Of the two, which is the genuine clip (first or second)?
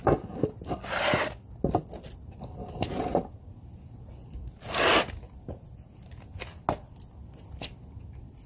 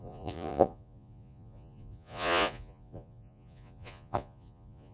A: first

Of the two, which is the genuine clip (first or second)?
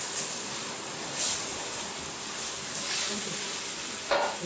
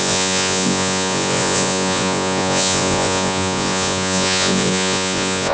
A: first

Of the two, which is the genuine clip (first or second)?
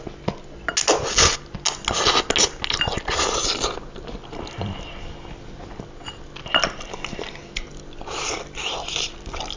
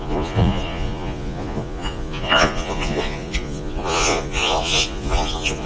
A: first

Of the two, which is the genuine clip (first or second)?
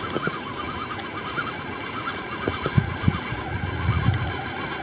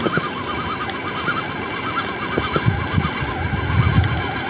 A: second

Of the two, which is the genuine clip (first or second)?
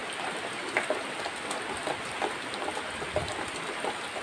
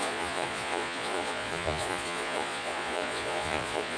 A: first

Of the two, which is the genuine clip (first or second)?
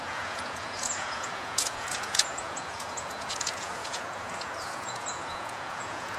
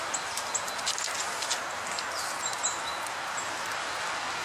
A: second